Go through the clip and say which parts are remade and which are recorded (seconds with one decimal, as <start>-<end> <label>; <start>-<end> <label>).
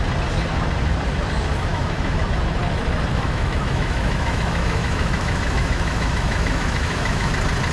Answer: 0.0-1.7 recorded; 1.7-2.2 remade; 2.2-3.1 recorded; 3.1-7.3 remade; 7.3-7.7 recorded